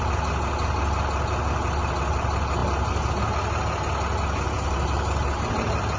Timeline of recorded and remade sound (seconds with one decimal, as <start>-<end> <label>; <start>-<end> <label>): 0.0-6.0 recorded